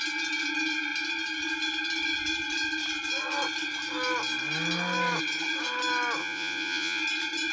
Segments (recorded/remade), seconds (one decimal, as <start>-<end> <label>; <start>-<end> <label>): 0.0-6.2 recorded; 6.2-7.0 remade; 7.0-7.5 recorded